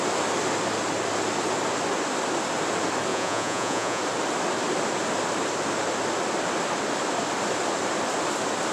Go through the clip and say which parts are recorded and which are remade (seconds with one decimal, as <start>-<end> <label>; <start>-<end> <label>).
0.0-3.1 recorded; 3.1-4.0 remade; 4.0-8.7 recorded